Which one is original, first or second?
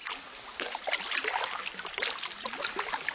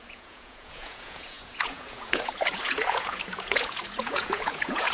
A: first